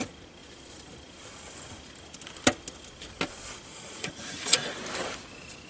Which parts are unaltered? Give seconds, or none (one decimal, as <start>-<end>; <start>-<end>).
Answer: 0.0-3.7; 4.8-5.7